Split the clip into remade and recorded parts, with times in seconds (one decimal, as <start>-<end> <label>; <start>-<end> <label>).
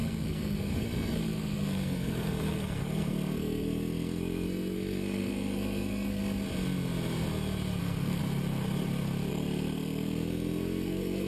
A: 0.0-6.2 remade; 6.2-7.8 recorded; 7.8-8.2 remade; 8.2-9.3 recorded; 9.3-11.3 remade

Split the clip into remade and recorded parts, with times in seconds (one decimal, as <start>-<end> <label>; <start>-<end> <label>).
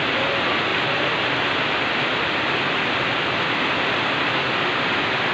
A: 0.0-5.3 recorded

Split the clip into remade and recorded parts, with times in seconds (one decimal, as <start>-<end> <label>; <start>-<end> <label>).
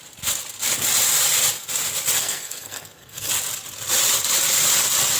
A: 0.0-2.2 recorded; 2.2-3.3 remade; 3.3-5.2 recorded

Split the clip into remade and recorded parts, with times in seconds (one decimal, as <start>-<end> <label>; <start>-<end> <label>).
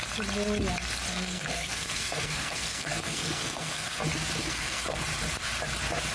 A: 0.0-1.1 recorded; 1.1-4.0 remade; 4.0-4.4 recorded; 4.4-5.0 remade; 5.0-6.1 recorded